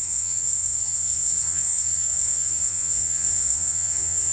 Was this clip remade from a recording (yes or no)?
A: yes